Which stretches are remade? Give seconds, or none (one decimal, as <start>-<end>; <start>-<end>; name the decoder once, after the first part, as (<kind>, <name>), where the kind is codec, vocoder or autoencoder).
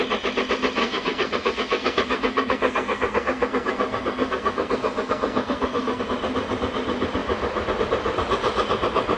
0.8-6.0 (codec, SNAC)